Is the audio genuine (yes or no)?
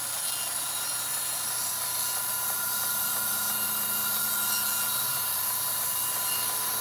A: yes